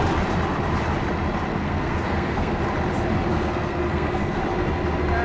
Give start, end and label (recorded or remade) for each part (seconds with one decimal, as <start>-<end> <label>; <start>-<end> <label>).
0.0-1.5 recorded; 1.5-2.6 remade; 2.6-3.3 recorded; 3.3-4.4 remade; 4.4-5.2 recorded